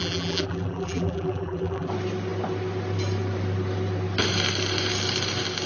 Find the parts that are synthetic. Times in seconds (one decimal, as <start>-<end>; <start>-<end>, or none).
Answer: 0.0-1.9